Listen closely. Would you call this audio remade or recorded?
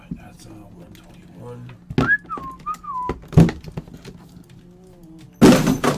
recorded